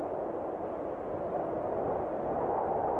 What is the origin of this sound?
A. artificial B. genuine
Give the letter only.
B